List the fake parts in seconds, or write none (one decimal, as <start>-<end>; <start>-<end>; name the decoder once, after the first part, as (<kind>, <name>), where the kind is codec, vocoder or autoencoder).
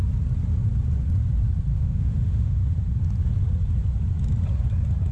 1.7-2.6 (autoencoder, DAC-VAE)